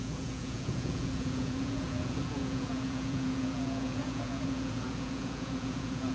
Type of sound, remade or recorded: remade